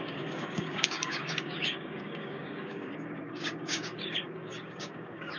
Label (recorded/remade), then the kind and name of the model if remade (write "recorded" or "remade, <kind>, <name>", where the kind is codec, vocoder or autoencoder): remade, codec, DAC